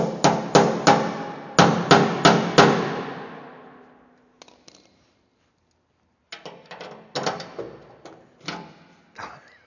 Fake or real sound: real